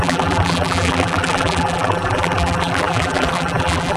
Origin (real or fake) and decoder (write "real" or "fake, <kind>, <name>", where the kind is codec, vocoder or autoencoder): fake, vocoder, BigVGAN v2